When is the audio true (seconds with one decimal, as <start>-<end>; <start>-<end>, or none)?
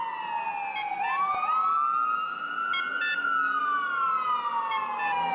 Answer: 0.0-5.3